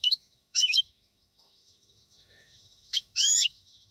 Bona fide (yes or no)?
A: no